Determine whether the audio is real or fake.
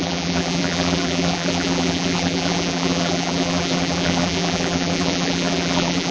fake